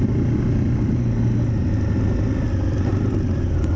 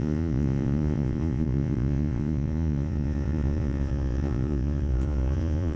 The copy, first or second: second